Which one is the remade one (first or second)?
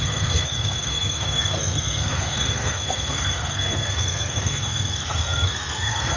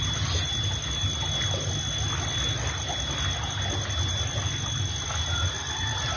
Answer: first